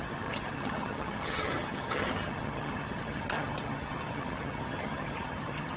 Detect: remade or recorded remade